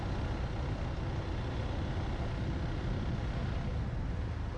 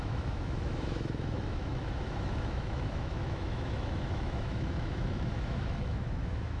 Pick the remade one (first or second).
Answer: second